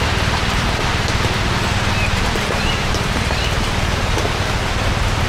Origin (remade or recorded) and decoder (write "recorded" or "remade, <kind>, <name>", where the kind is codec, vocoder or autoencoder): remade, vocoder, BigVGAN v2